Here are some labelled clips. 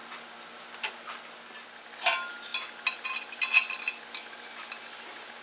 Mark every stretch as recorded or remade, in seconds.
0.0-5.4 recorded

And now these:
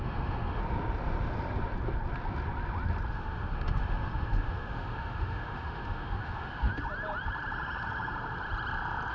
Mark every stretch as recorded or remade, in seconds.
0.0-0.6 remade; 0.6-3.1 recorded; 3.1-6.7 remade; 6.7-9.1 recorded

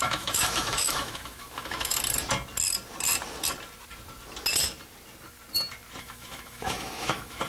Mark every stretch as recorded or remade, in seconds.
0.0-1.9 remade; 1.9-6.0 recorded; 6.0-7.5 remade

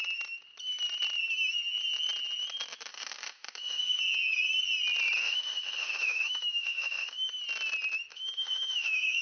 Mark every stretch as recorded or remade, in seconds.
0.0-2.9 recorded; 2.9-4.0 remade; 4.0-5.2 recorded; 5.2-7.3 remade; 7.3-8.1 recorded; 8.1-9.2 remade

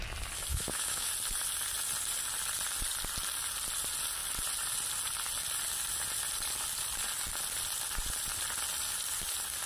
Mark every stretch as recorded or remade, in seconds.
0.0-0.5 recorded; 0.5-1.1 remade; 1.1-9.7 recorded

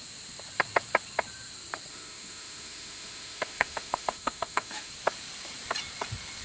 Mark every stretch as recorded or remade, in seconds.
0.0-1.9 recorded; 1.9-4.9 remade; 4.9-6.4 recorded

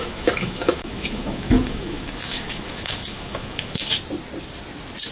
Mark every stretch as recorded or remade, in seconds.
0.0-3.8 remade; 3.8-5.1 recorded